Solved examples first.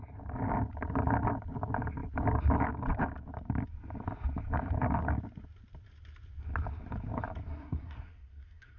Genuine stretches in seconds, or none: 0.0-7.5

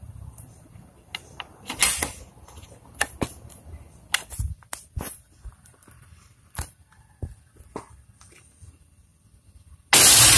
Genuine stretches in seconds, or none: 0.0-10.4

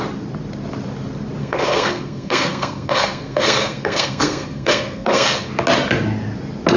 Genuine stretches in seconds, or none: 0.0-1.4; 5.5-6.8